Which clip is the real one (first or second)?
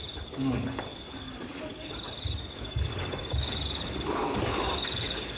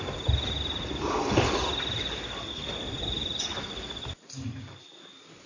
second